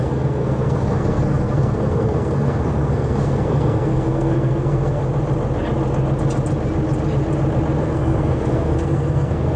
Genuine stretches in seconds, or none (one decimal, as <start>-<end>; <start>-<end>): 5.0-7.8